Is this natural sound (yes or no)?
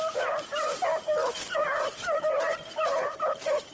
yes